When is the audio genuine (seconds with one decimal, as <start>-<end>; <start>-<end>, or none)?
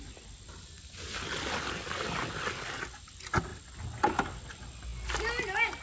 0.0-5.8